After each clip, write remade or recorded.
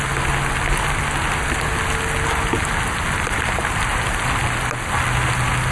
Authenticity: recorded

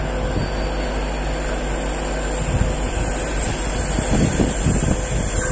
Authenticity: recorded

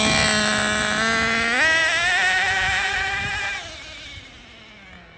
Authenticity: recorded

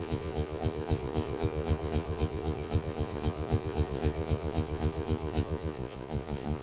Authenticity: remade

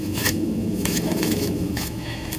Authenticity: remade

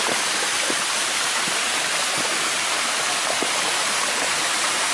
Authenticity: remade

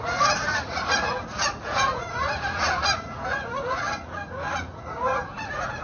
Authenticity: remade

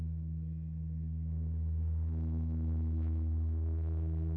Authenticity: remade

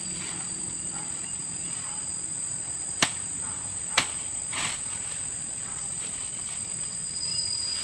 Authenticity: remade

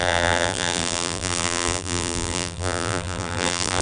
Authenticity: remade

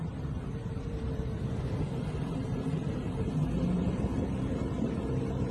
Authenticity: remade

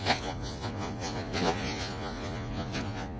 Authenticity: remade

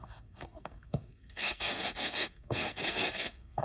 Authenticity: remade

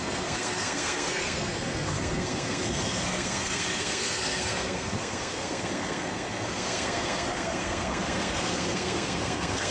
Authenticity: remade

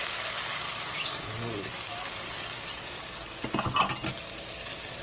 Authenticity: recorded